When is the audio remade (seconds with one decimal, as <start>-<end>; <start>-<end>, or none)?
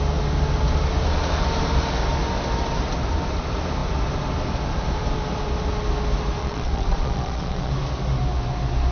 6.4-7.7